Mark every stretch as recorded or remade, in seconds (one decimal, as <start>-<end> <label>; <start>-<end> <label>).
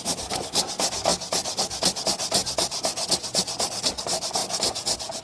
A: 0.0-5.2 recorded